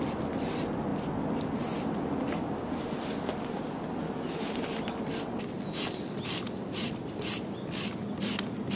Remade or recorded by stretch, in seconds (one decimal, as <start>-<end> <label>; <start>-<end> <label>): 0.0-8.8 recorded